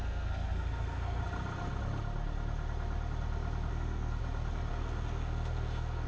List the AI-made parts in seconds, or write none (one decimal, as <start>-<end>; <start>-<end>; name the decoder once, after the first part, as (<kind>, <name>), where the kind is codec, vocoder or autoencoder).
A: 0.0-1.2 (codec, SNAC); 3.7-4.2; 4.7-6.1